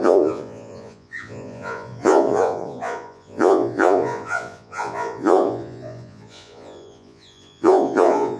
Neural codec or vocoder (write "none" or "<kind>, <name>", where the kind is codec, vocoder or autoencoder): vocoder, Vocos